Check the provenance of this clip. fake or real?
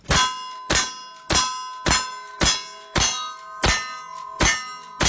real